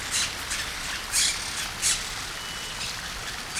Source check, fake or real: real